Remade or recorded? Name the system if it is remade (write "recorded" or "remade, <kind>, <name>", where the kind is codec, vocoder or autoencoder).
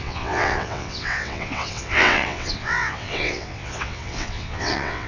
remade, vocoder, WaveNeXt